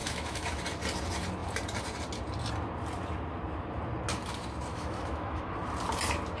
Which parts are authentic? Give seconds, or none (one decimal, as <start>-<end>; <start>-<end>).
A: 0.6-4.7; 5.4-6.4